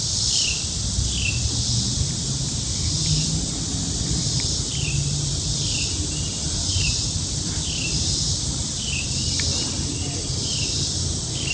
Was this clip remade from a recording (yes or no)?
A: yes